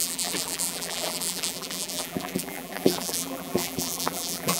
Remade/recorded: remade